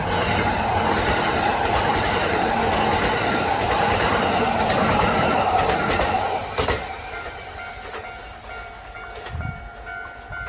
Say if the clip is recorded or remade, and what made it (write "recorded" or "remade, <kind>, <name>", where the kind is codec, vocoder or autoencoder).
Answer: recorded